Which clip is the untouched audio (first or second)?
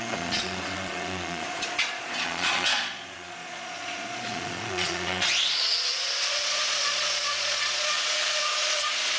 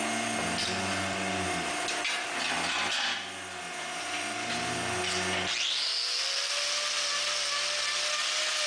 second